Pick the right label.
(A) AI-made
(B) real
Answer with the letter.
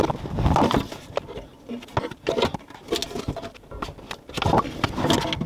B